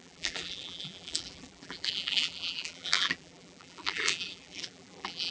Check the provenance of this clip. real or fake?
fake